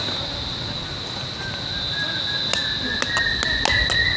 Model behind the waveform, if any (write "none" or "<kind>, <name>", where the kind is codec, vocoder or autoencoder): none